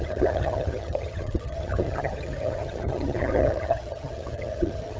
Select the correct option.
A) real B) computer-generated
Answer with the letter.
B